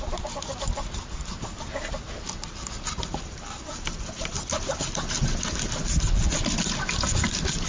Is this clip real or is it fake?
real